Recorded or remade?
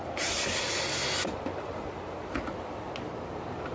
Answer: recorded